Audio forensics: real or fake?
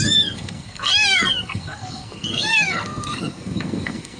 fake